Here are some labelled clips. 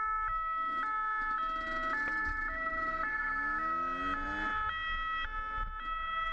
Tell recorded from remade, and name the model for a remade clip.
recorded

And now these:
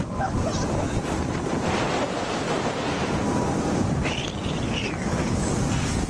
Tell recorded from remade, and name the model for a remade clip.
remade, vocoder, BigVGAN v2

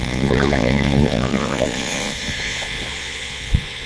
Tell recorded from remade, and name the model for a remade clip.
remade, vocoder, Vocos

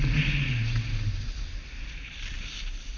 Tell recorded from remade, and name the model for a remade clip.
recorded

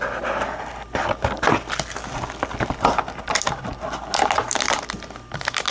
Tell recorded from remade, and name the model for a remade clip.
recorded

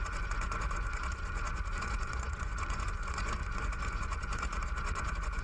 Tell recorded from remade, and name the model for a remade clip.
remade, vocoder, Vocos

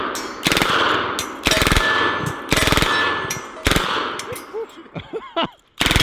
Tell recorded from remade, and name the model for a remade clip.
recorded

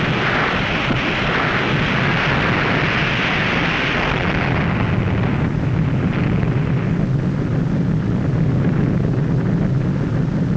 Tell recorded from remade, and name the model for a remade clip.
recorded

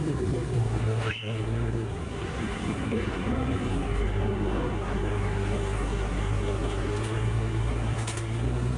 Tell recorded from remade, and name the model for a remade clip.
remade, codec, SNAC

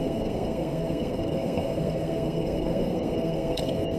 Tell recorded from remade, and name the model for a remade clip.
remade, codec, SNAC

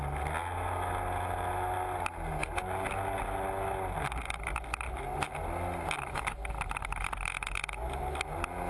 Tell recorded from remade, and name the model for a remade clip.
recorded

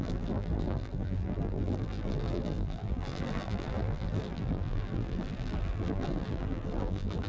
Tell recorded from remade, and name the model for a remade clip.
remade, vocoder, BigVGAN v2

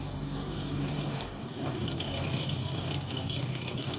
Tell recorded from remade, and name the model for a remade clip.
remade, codec, DAC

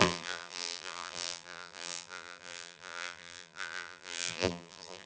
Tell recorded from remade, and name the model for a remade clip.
remade, vocoder, BigVGAN v2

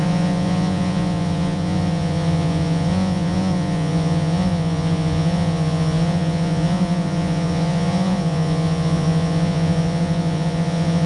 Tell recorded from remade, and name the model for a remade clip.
remade, vocoder, Vocos